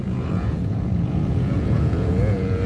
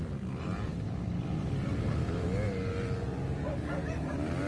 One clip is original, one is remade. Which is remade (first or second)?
first